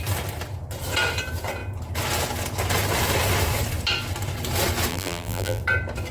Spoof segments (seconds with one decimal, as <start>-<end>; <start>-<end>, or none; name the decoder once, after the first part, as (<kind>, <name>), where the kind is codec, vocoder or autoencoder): 4.9-5.6 (vocoder, BigVGAN v2)